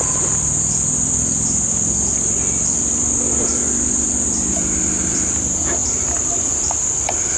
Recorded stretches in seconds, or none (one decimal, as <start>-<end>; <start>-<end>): 0.0-7.4